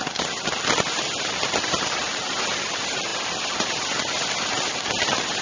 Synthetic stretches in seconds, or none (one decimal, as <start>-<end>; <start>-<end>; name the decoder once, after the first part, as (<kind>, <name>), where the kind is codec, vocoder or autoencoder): none